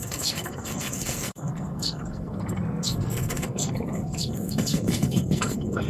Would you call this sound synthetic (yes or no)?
yes